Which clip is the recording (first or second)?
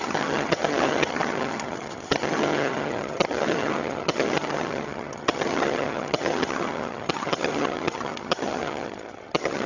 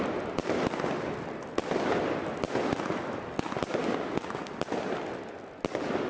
second